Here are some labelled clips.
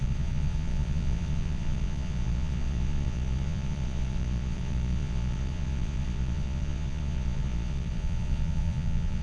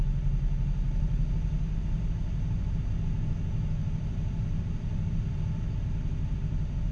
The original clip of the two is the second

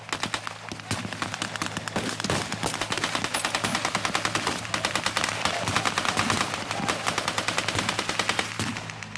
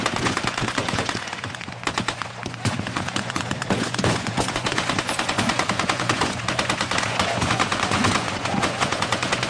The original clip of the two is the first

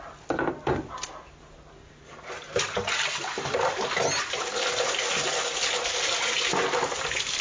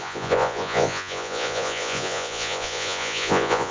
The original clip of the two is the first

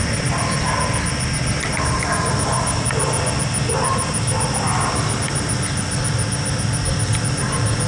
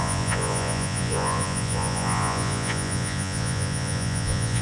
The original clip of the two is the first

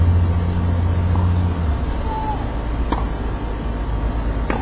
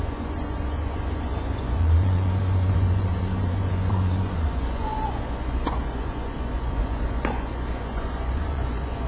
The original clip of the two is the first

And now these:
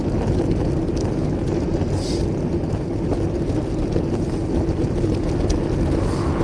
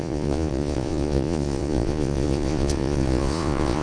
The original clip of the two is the first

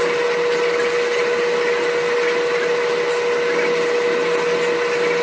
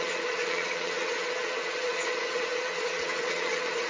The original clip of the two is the first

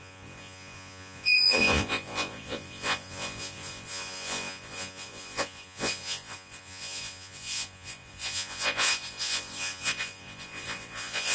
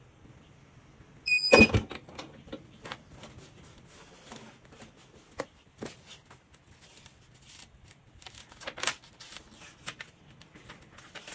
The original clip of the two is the second